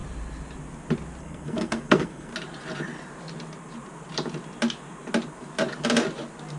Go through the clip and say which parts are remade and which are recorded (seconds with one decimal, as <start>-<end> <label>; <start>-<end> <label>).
0.0-1.2 recorded; 1.2-2.3 remade; 2.3-6.6 recorded